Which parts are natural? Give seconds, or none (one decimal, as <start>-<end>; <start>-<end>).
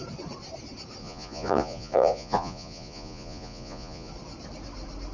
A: 0.0-1.0; 4.1-5.1